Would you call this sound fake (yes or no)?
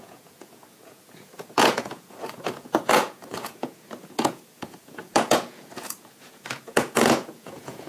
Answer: yes